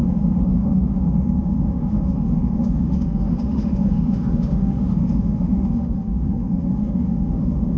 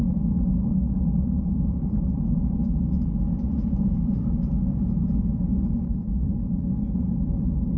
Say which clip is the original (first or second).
second